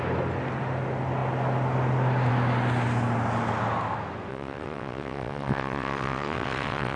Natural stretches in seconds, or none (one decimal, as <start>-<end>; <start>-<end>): 0.0-4.3